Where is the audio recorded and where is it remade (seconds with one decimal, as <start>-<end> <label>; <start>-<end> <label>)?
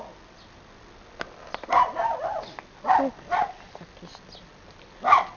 0.0-5.4 recorded